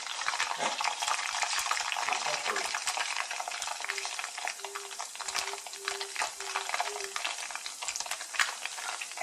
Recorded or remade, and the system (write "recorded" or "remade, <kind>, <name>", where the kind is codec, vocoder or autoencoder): recorded